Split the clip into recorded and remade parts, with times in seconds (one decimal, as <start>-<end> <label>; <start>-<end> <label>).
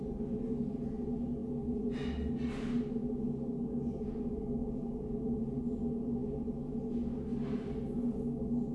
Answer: 0.0-4.6 recorded; 4.6-5.6 remade; 5.6-8.7 recorded